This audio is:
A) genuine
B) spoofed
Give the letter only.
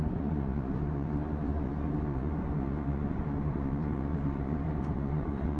B